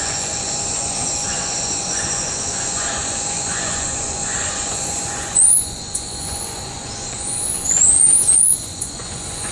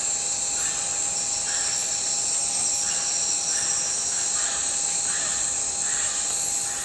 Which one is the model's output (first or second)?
first